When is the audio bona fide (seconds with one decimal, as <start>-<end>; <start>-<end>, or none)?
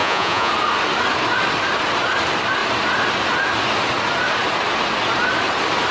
0.5-5.9